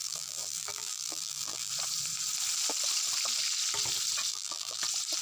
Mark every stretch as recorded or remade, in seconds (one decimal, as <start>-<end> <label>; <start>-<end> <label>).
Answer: 0.0-1.7 remade; 1.7-4.3 recorded; 4.3-4.8 remade; 4.8-5.2 recorded